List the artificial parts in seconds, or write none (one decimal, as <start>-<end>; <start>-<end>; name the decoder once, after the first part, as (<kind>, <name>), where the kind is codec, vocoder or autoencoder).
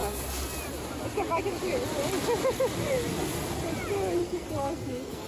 4.2-5.3 (codec, SNAC)